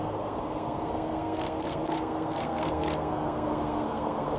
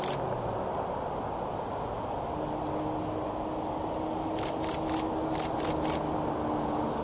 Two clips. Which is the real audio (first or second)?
second